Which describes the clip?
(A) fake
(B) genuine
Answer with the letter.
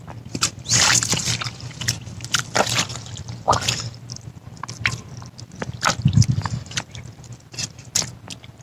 B